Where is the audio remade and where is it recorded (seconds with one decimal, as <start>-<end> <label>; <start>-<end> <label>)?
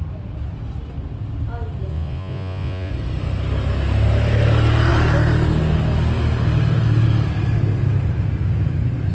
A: 0.0-1.9 recorded; 1.9-2.9 remade; 2.9-9.1 recorded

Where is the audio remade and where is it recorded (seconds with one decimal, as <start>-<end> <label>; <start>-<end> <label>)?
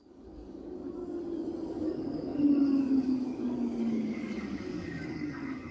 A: 0.0-1.0 remade; 1.0-1.7 recorded; 1.7-5.7 remade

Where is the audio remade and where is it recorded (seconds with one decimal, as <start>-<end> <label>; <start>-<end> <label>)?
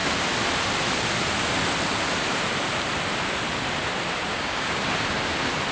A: 0.0-4.3 recorded; 4.3-4.8 remade; 4.8-5.7 recorded